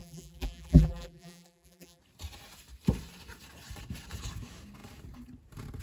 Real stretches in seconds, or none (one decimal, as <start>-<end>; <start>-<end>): 2.0-5.8